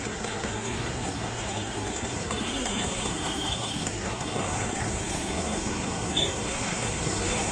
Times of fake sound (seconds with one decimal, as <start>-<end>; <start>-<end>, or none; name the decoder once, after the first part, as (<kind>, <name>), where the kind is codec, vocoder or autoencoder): 0.0-7.5 (codec, SNAC)